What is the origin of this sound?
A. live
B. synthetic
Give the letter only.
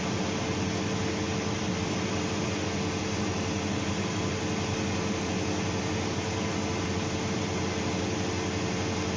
A